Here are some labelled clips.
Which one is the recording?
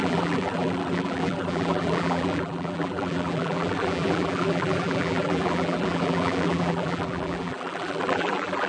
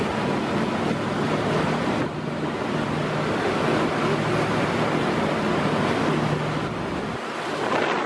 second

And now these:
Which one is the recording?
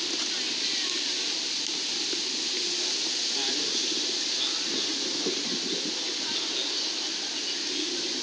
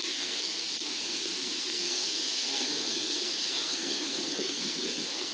first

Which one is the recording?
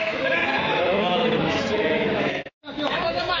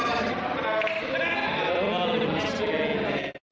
second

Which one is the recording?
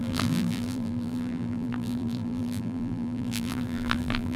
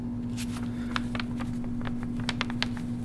second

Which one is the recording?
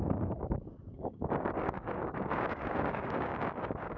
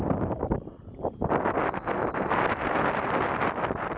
second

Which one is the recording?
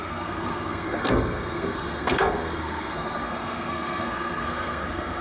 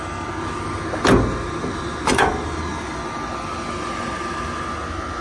second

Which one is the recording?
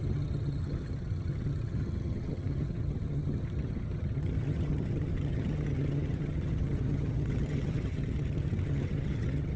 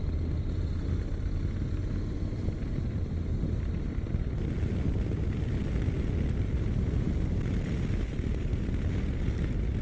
second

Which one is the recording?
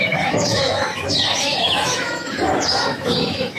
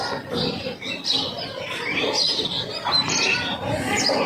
second